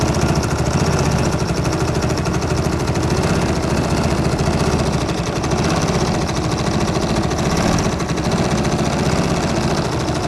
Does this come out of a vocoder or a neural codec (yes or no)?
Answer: yes